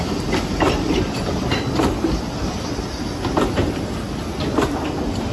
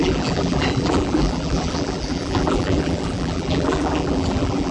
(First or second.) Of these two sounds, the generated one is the second